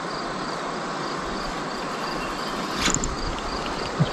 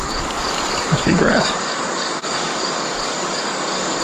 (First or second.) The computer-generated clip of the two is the second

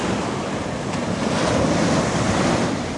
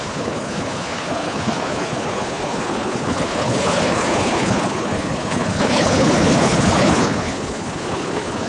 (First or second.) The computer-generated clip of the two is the second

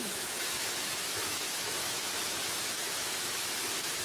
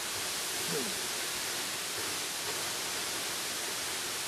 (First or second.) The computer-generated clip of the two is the first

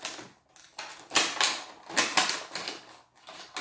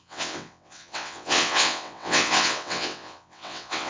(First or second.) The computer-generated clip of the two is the second